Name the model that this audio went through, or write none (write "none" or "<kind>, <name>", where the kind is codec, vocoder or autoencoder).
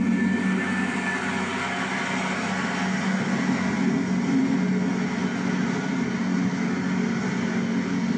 none